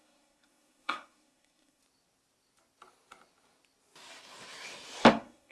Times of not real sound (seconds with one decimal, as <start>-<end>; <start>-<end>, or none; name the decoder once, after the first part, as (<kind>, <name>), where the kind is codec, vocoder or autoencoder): 0.0-1.8 (codec, SNAC); 5.1-5.5

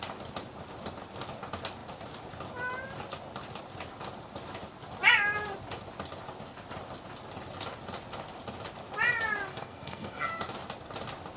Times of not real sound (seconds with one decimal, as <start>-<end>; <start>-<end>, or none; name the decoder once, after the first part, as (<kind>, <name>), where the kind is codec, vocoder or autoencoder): 9.5-10.3 (codec, SNAC)